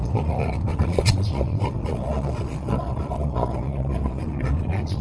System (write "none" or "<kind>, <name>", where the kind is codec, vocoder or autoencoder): vocoder, Vocos